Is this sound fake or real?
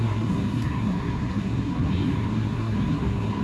fake